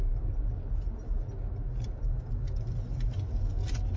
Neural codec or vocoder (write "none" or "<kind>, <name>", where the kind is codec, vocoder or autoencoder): none